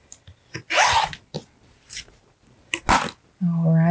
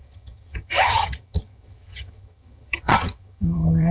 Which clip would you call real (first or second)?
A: first